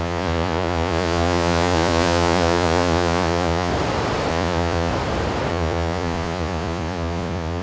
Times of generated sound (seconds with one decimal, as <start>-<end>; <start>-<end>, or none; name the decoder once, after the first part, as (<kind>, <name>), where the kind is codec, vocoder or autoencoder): 0.0-3.7 (vocoder, Vocos); 4.3-4.9; 5.5-7.6